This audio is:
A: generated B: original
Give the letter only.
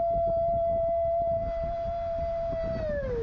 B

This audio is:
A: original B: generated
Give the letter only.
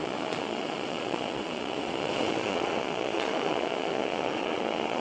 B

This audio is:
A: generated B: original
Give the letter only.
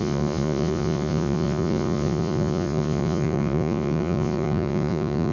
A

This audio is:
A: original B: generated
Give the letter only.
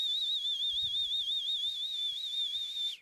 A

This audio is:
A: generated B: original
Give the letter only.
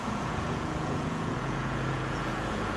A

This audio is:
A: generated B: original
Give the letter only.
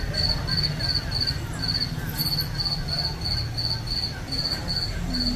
B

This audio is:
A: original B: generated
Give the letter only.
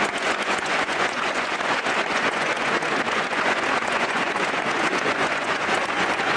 B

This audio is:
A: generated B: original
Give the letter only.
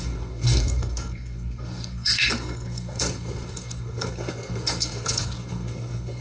A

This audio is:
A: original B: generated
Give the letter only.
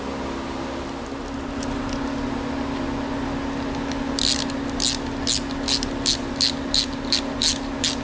A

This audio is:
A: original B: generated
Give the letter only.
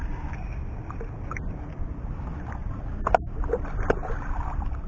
A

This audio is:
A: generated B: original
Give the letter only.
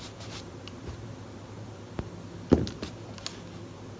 B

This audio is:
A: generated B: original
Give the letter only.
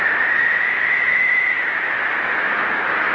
A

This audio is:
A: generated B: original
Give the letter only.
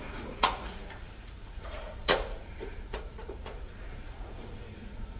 A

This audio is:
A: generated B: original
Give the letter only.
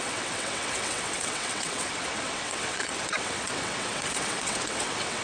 A